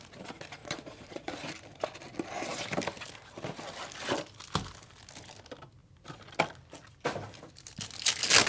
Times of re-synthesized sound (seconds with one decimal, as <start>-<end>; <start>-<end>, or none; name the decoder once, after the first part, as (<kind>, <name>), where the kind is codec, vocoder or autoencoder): 0.6-1.3 (vocoder, Vocos)